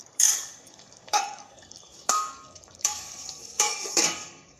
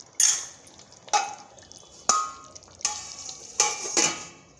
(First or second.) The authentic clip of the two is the second